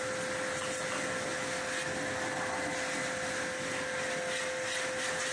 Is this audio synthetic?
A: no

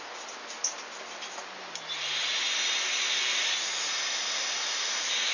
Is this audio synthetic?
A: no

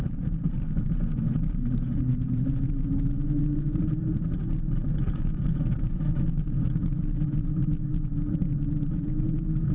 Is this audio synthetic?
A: yes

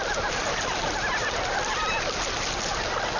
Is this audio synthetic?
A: no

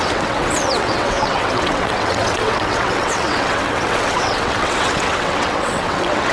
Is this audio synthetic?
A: yes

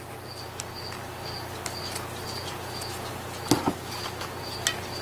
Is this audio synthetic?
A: no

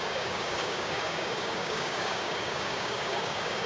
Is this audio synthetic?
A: yes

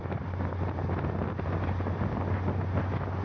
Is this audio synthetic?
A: no